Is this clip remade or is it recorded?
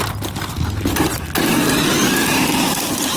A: recorded